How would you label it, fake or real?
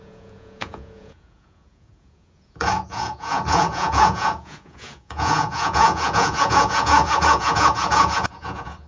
fake